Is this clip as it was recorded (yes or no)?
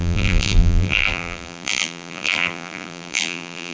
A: no